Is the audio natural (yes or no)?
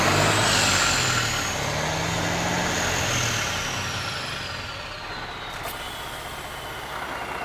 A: yes